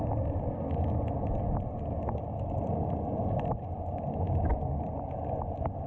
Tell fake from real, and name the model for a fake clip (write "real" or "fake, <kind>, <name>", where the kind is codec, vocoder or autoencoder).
real